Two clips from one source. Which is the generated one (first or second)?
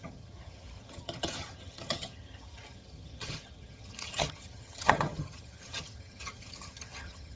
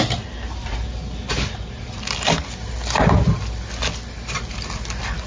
first